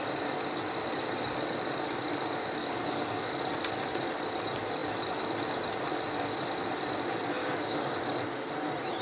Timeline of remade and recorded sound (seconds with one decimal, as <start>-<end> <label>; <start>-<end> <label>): 0.0-2.6 recorded; 2.6-3.3 remade; 3.3-7.4 recorded; 7.4-8.0 remade; 8.0-9.0 recorded